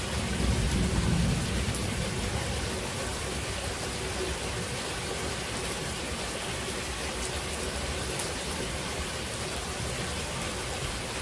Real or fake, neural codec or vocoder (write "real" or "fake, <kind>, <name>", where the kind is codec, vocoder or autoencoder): real